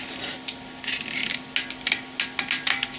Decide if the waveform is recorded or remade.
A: recorded